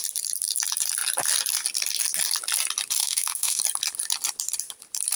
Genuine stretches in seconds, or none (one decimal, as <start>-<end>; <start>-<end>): 0.0-3.0; 3.6-5.2